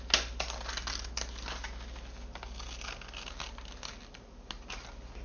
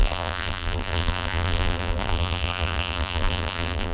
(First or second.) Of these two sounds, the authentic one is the first